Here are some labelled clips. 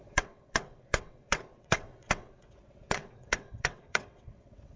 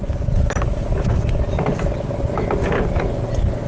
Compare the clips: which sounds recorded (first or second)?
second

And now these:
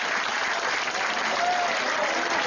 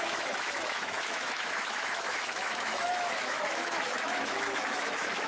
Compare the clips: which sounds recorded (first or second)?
first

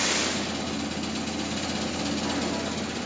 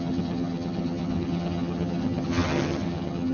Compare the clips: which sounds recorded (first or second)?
first